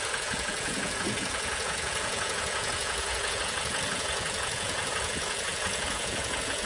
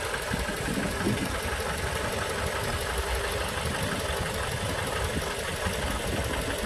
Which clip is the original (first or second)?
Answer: second